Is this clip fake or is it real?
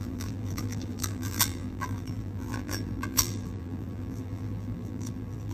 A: fake